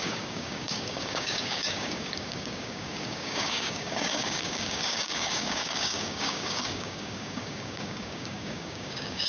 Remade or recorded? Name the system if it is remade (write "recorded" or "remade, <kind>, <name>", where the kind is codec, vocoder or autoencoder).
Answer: remade, codec, DAC